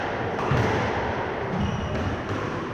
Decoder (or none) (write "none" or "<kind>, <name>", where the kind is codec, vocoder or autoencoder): vocoder, BigVGAN v2